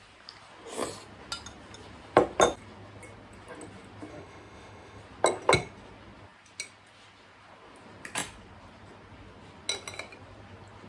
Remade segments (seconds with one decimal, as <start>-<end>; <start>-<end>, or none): 4.1-5.0